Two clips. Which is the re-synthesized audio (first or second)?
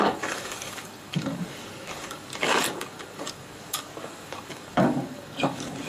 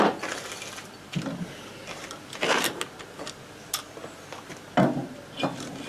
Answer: first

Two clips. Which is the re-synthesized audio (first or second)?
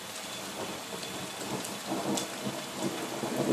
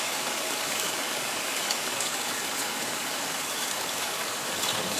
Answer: second